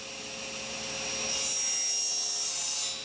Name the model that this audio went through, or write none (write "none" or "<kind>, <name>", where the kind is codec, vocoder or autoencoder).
none